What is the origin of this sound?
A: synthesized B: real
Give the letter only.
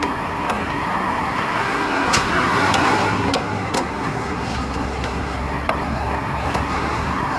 A